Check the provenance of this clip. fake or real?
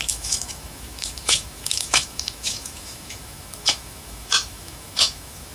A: fake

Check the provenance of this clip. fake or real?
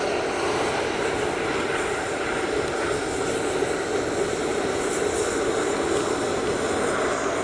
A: real